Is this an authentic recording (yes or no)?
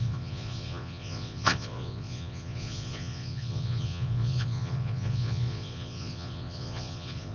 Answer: no